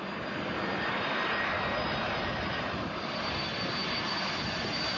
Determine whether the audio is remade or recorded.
remade